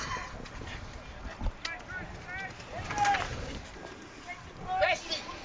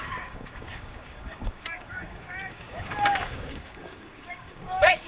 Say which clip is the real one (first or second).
first